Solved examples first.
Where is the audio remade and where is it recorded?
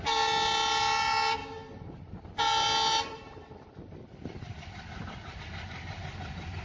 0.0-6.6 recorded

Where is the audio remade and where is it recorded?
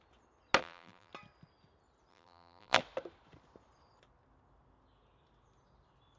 0.0-0.6 recorded; 0.6-1.1 remade; 1.1-2.1 recorded; 2.1-2.8 remade; 2.8-6.2 recorded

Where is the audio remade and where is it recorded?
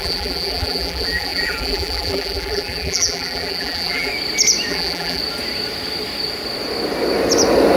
0.0-4.1 remade; 4.1-4.7 recorded; 4.7-5.2 remade; 5.2-7.8 recorded